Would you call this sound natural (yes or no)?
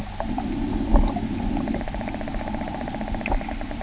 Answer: yes